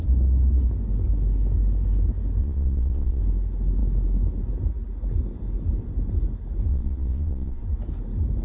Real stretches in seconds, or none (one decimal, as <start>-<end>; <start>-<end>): 0.0-2.4; 3.2-6.7; 7.6-8.4